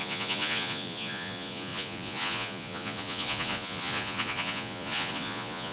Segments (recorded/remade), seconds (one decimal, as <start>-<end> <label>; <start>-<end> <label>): 0.0-5.7 remade